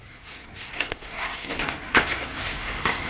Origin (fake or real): fake